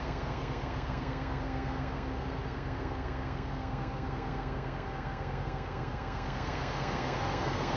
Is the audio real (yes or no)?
no